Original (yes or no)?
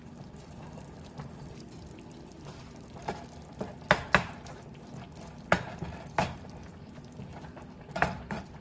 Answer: no